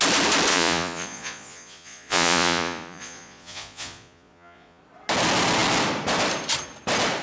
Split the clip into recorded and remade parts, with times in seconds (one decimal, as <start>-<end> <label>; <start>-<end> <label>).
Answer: 0.0-0.5 recorded; 0.5-4.8 remade; 4.8-7.2 recorded

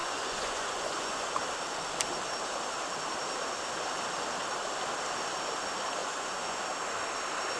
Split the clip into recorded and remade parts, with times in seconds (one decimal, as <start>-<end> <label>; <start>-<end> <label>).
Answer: 0.0-1.3 remade; 1.3-6.0 recorded; 6.0-6.6 remade; 6.6-7.6 recorded